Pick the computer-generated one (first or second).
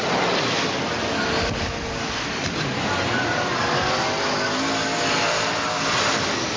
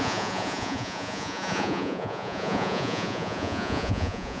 second